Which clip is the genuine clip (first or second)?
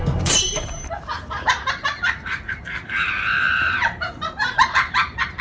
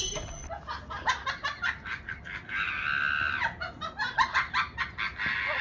second